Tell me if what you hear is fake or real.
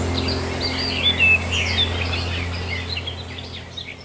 real